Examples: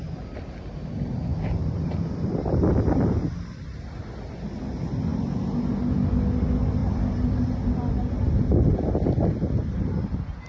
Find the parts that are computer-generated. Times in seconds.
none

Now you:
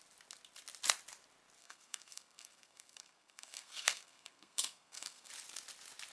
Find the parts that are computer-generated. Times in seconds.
1.6-5.3 (codec, SNAC)

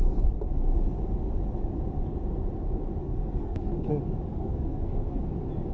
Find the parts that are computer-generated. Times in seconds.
3.0-3.9 (codec, SNAC); 4.3-5.2

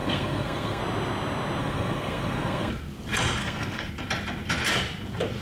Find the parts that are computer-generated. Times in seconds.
0.0-0.8 (codec, SNAC); 1.6-2.7; 3.4-3.9

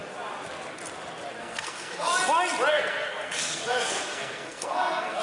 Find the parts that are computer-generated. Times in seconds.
1.4-2.1 (codec, SNAC); 2.7-5.2

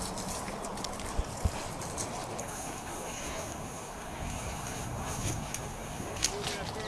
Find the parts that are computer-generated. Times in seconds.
2.4-6.3 (codec, SNAC)

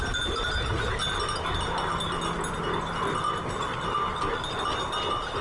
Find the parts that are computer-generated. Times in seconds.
none

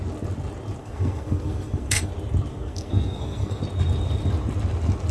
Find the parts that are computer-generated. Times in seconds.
0.8-2.1 (codec, SNAC); 2.5-3.6